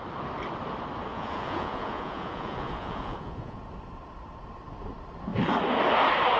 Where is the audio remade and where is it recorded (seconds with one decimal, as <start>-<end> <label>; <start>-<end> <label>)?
0.0-1.1 recorded; 1.1-3.6 remade; 3.6-6.4 recorded